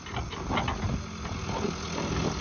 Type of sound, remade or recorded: recorded